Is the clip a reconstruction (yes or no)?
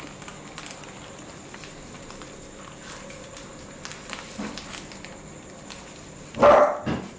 no